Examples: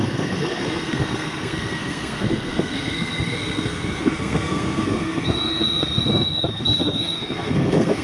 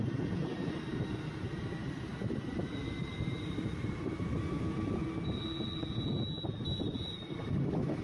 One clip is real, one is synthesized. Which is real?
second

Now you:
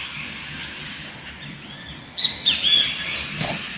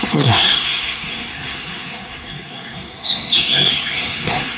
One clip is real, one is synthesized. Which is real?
first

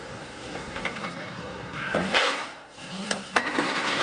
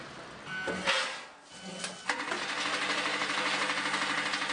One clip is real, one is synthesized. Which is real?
second